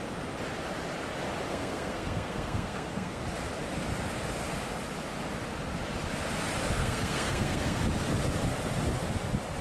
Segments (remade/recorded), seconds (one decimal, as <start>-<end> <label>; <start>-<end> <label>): 0.0-1.5 recorded; 1.5-3.2 remade; 3.2-6.8 recorded; 6.8-7.8 remade; 7.8-9.6 recorded

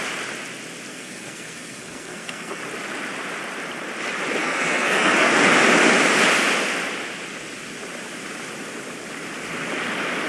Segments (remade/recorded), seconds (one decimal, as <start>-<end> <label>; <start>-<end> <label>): 0.0-0.9 recorded; 0.9-2.6 remade; 2.6-4.4 recorded; 4.4-5.3 remade; 5.3-10.3 recorded

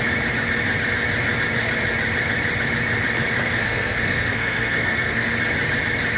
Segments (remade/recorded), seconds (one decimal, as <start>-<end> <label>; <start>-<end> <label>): 0.0-3.4 recorded; 3.4-5.3 remade; 5.3-6.2 recorded

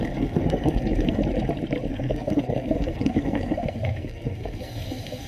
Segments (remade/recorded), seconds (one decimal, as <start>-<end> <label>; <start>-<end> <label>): 0.0-1.2 remade; 1.2-1.9 recorded; 1.9-5.3 remade